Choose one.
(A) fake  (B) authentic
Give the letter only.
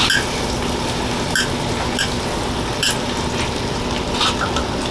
B